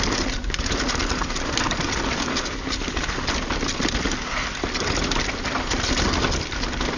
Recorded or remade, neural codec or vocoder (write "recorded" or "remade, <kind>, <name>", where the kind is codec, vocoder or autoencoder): recorded